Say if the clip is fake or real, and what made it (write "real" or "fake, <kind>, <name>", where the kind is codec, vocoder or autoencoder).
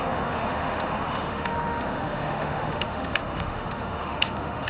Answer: fake, autoencoder, DAC-VAE